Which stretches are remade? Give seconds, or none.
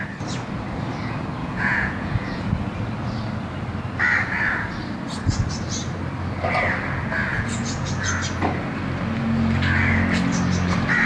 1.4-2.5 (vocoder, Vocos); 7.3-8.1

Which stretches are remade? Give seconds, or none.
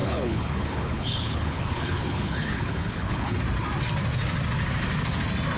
0.0-3.4 (codec, HILCodec)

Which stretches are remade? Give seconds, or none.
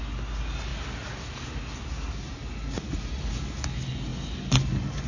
none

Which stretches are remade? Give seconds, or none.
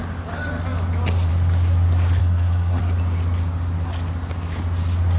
2.2-2.8 (codec, SNAC)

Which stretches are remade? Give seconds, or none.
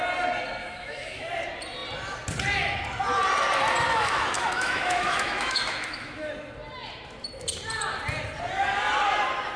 0.6-1.3 (autoencoder, DAC-VAE); 3.9-6.3